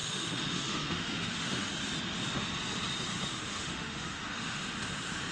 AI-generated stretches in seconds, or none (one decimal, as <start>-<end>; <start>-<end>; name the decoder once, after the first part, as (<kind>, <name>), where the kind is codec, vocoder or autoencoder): 0.0-1.7 (autoencoder, DAC-VAE); 3.3-4.6